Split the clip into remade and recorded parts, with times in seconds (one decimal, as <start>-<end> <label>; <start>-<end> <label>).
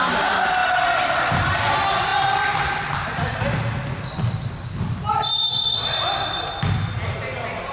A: 0.0-7.7 recorded